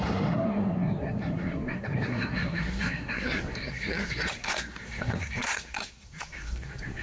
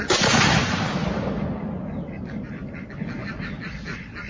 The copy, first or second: first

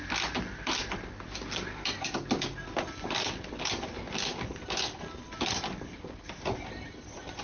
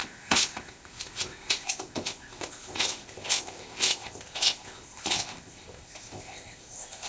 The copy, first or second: second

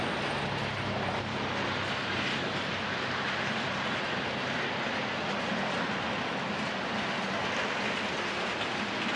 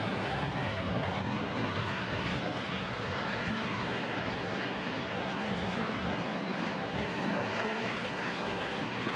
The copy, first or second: second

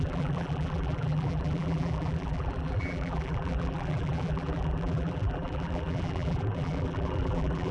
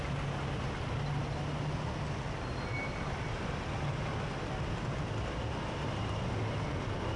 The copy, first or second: first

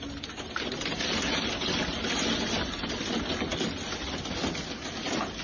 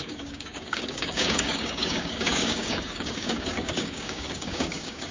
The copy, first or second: second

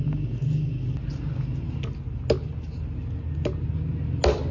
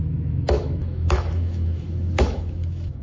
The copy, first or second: second